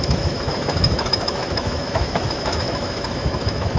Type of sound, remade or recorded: remade